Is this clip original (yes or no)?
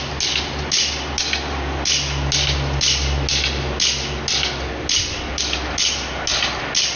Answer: yes